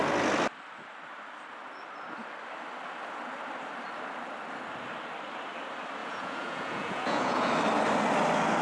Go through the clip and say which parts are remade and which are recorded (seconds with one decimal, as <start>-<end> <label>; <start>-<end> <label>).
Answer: 0.0-6.0 recorded; 6.0-7.5 remade; 7.5-8.6 recorded